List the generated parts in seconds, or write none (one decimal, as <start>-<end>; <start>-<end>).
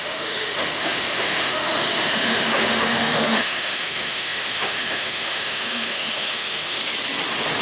0.0-6.8